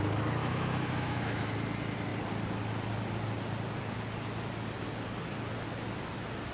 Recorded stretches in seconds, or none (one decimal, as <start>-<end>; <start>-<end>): 0.0-0.4; 1.5-6.5